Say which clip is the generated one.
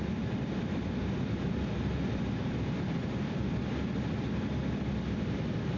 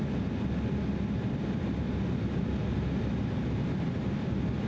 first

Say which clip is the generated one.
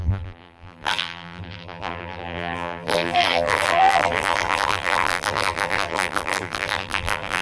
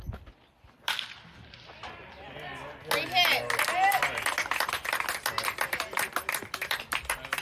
first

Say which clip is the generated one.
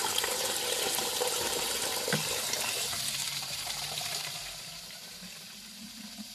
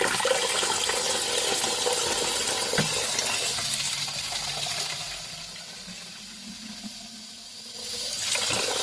first